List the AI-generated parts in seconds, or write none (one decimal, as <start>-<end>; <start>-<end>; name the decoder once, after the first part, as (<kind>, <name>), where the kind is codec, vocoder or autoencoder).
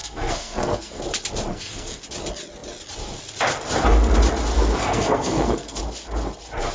0.0-1.0 (codec, SNAC); 1.5-2.0; 4.5-5.8